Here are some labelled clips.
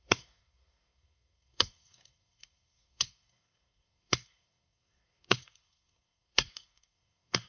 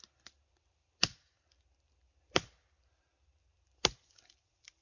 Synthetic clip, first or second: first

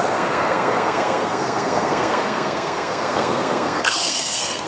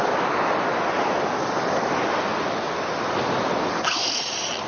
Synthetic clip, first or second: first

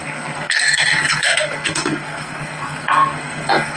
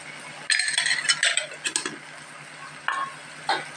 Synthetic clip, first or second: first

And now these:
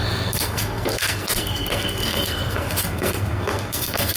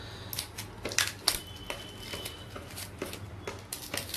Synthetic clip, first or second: first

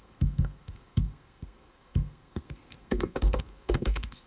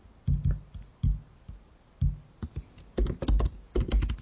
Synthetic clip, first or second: first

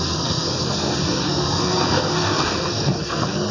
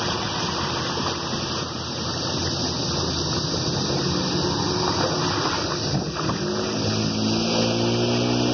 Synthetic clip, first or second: first